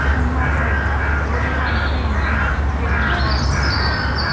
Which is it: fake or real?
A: real